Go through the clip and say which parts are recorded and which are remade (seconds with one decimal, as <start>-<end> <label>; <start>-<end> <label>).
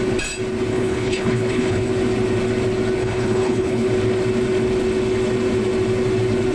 0.0-0.7 recorded; 0.7-1.9 remade; 1.9-3.0 recorded; 3.0-3.9 remade; 3.9-6.5 recorded